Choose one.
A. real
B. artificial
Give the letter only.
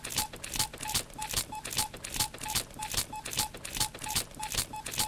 A